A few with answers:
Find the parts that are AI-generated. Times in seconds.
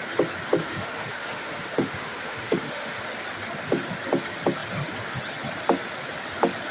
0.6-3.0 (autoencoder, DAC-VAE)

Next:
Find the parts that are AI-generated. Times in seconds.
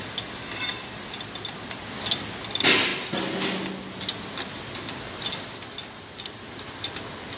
none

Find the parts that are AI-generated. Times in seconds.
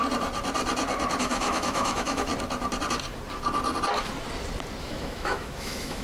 1.2-2.3 (autoencoder, DAC-VAE); 4.8-6.0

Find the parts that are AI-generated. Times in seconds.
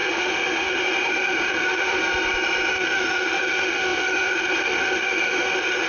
0.0-2.0 (autoencoder, DAC-VAE); 2.7-5.9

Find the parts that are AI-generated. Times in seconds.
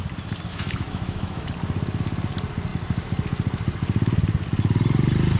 0.5-1.5 (autoencoder, DAC-VAE)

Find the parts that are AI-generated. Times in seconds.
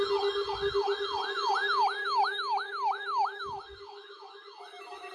2.0-5.1 (autoencoder, DAC-VAE)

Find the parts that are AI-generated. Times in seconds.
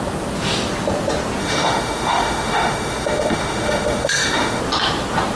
1.4-4.6 (autoencoder, DAC-VAE)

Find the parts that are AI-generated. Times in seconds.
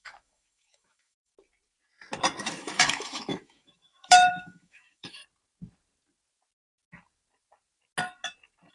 0.0-1.3 (autoencoder, DAC-VAE); 2.4-5.2